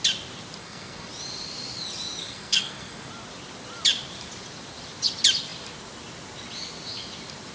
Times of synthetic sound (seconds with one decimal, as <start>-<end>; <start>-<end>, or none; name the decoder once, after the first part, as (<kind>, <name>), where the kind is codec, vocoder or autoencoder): 0.6-1.1 (codec, SNAC); 2.2-3.1